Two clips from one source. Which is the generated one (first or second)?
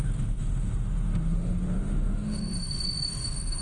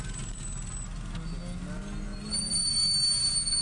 first